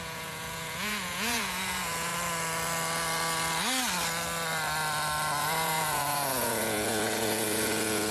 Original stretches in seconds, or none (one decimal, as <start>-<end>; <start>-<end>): 2.1-5.4